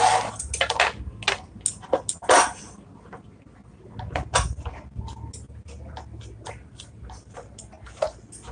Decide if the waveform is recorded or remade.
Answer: recorded